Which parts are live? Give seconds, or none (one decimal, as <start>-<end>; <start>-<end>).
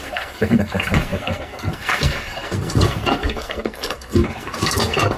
none